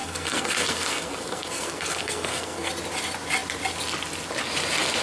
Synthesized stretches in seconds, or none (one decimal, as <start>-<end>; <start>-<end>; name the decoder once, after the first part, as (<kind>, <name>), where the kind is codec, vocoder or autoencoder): 0.0-2.7 (codec, SNAC)